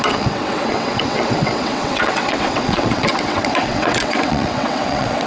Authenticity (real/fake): fake